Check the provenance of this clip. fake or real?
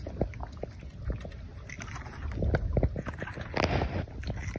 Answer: real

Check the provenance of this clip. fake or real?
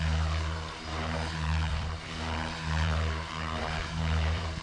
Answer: fake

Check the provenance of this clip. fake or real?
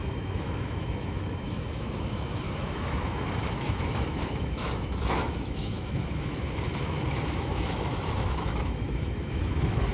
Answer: fake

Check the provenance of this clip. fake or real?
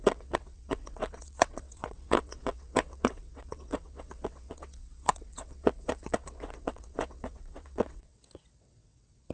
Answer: fake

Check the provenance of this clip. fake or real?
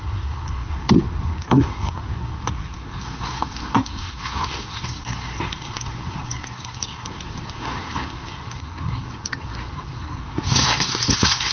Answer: fake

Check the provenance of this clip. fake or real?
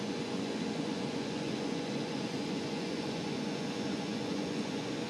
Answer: fake